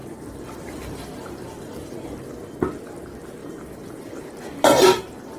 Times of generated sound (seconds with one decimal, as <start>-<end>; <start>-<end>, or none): 0.0-1.9; 3.4-5.4